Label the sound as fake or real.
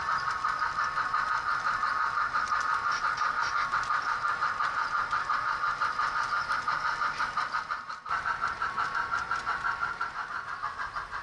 real